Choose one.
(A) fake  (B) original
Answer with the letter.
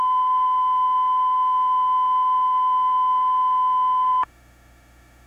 A